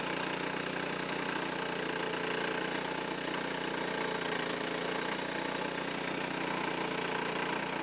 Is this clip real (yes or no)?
yes